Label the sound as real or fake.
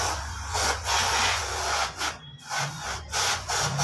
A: fake